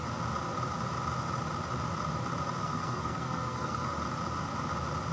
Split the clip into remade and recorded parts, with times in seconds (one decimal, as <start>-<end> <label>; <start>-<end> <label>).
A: 0.0-2.6 recorded; 2.6-3.9 remade; 3.9-5.1 recorded